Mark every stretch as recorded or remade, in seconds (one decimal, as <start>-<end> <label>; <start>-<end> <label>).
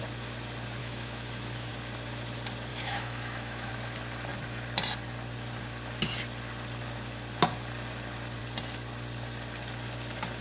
0.0-0.8 recorded; 0.8-1.7 remade; 1.7-2.7 recorded; 2.7-3.7 remade; 3.7-10.4 recorded